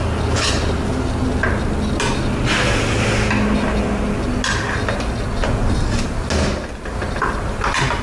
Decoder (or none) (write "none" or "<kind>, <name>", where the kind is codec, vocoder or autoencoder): none